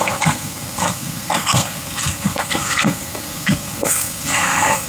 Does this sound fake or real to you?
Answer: fake